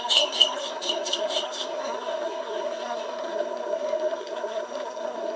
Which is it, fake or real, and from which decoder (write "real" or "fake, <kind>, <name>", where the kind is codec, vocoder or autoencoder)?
fake, codec, SNAC